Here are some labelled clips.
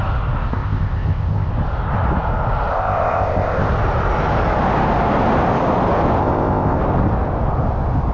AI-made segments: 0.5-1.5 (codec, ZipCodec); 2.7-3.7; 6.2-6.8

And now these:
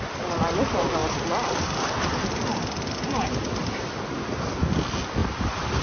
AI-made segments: none

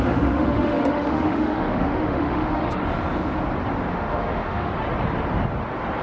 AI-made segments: 0.0-2.8 (autoencoder, DAC-VAE); 3.9-4.7

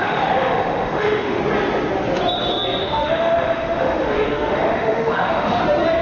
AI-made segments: 0.0-1.4 (autoencoder, DAC-VAE); 2.8-5.6

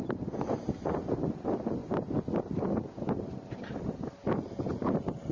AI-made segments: 4.8-5.3 (vocoder, BigVGAN v2)